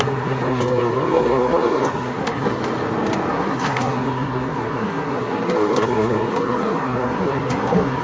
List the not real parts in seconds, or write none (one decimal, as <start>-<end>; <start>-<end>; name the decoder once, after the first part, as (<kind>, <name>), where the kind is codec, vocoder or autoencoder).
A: 0.0-2.6 (codec, SNAC); 3.3-8.0